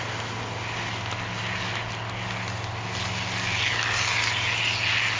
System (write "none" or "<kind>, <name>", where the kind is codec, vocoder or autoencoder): none